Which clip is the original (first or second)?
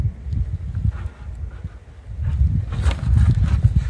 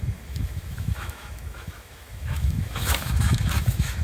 first